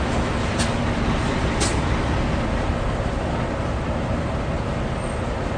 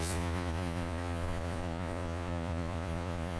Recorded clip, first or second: first